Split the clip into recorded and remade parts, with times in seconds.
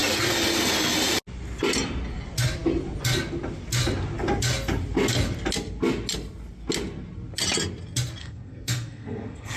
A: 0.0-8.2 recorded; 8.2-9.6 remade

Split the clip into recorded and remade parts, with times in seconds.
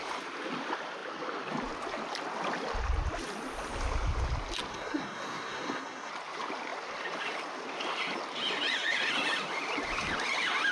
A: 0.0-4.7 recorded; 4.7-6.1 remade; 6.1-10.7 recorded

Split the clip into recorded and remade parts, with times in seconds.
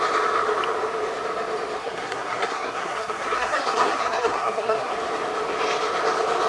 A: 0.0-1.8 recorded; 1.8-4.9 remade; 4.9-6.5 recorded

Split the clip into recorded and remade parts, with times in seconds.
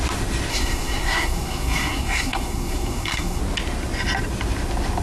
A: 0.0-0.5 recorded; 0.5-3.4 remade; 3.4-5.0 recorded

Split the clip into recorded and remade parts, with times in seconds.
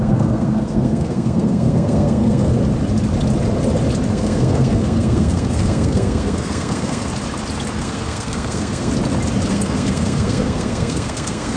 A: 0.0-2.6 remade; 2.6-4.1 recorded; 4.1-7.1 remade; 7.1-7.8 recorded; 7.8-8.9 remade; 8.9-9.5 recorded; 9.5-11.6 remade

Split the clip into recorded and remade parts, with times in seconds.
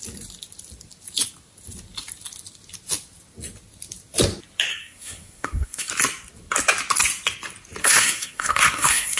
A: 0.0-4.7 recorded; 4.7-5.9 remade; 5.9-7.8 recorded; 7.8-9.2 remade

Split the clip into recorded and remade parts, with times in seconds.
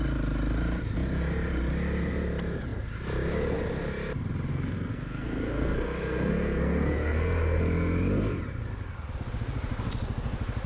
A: 0.0-4.5 recorded; 4.5-7.6 remade; 7.6-10.7 recorded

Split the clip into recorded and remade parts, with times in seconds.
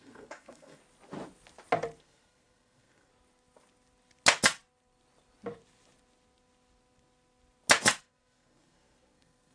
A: 0.0-0.8 remade; 0.8-2.0 recorded; 2.0-3.1 remade; 3.1-8.0 recorded; 8.0-9.5 remade